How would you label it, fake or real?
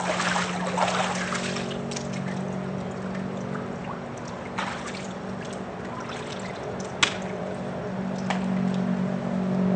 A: real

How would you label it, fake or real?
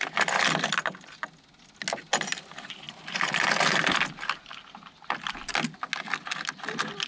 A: real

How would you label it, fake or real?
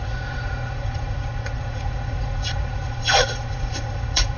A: fake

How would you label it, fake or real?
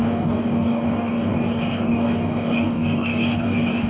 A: fake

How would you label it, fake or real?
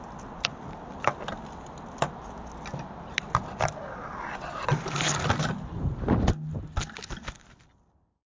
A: real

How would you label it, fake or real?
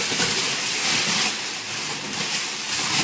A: real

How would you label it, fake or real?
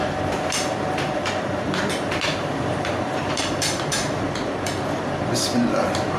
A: fake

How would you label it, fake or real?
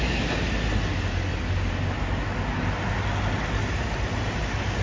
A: real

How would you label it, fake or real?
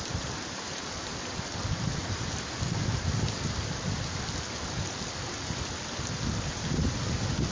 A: fake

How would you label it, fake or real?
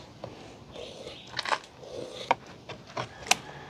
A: real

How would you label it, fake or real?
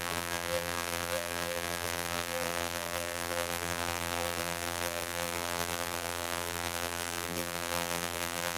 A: fake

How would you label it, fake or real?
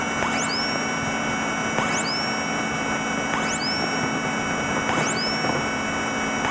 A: real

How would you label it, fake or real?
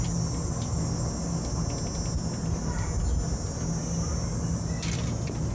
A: real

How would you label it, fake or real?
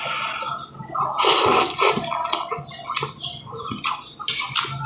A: real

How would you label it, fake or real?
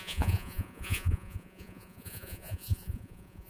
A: fake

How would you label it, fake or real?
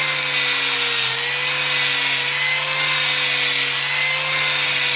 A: real